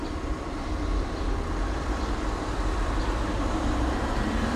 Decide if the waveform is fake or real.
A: fake